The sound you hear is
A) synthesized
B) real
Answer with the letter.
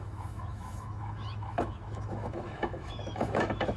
A